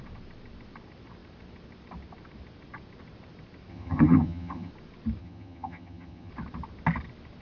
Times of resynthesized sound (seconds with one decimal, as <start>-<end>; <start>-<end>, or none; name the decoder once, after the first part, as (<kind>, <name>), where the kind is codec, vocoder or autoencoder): 3.7-4.7 (vocoder, HiFi-GAN); 5.2-6.3